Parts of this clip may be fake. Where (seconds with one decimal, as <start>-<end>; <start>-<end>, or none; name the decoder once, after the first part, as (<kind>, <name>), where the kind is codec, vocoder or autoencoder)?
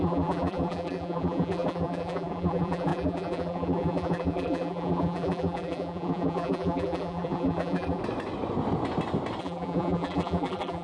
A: 0.0-8.0 (vocoder, BigVGAN v2); 9.4-10.8